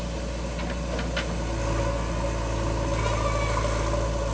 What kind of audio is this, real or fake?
real